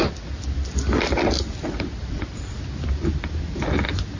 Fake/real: real